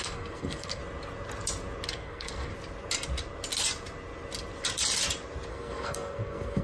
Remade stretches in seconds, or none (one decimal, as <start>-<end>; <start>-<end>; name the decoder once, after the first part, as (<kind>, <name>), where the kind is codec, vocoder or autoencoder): 0.0-0.8 (codec, SNAC); 1.9-2.5; 5.5-6.6